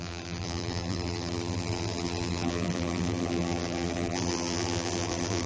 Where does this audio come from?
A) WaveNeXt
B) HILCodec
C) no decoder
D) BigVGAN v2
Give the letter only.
D